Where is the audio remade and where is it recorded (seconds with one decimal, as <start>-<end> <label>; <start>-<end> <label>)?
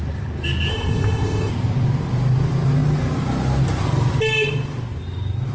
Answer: 0.0-0.7 recorded; 0.7-1.5 remade; 1.5-5.5 recorded